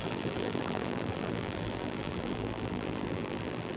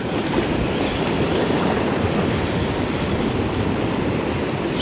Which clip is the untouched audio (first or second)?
second